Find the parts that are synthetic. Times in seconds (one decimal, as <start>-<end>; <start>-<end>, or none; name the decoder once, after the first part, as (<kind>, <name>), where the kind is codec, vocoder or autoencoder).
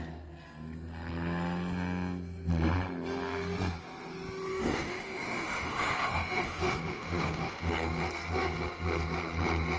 4.5-7.7 (autoencoder, DAC-VAE)